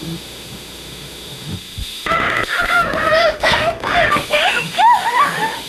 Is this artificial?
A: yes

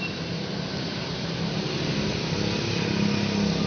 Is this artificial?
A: no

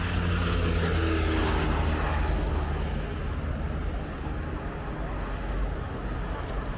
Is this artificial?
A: no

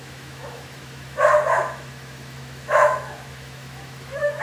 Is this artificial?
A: yes